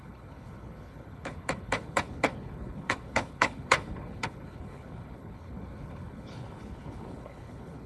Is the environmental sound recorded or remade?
remade